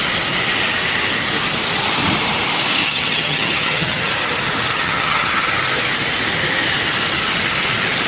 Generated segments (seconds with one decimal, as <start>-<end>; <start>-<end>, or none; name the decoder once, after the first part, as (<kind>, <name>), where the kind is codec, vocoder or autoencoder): 2.8-4.1 (vocoder, HiFi-GAN); 4.7-5.5